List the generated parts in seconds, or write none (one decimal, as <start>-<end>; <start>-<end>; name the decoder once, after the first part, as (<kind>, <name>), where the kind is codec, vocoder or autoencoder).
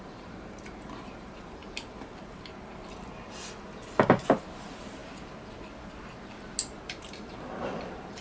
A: 0.0-1.6 (vocoder, BigVGAN v2); 4.4-5.0; 6.8-8.2